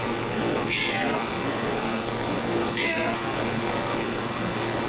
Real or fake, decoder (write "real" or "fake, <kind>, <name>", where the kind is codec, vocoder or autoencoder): fake, codec, SNAC